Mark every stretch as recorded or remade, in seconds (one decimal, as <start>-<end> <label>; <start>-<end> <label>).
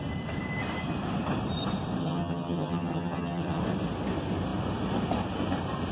0.0-2.0 recorded; 2.0-3.6 remade; 3.6-5.9 recorded